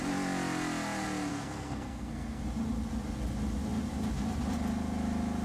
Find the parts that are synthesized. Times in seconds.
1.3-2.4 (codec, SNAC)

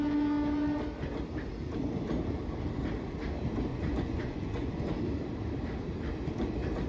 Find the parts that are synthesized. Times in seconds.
3.7-4.8 (vocoder, Vocos)

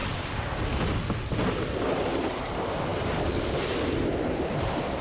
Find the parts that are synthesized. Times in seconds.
none

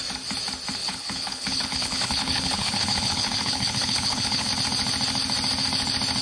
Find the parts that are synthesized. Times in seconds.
0.8-4.5 (codec, HILCodec)

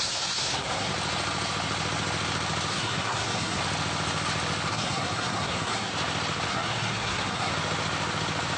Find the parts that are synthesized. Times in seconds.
0.0-0.9 (codec, SNAC); 2.7-3.6; 4.7-5.9; 6.5-7.5

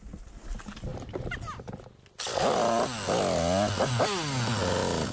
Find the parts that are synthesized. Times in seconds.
none